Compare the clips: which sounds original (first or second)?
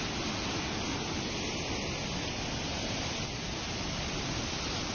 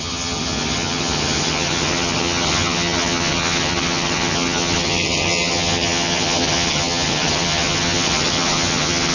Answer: first